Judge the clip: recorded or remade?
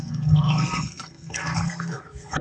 remade